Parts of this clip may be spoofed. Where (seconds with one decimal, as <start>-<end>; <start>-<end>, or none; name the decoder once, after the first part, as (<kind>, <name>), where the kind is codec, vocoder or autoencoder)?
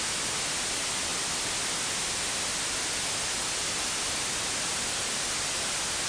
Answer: none